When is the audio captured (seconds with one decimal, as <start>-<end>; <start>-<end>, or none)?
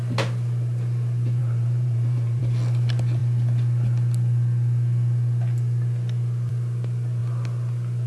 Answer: 0.0-1.4; 2.4-8.1